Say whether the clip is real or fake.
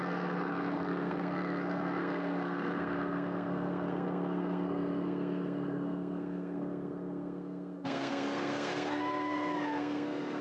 fake